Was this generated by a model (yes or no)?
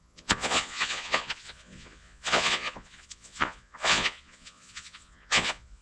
yes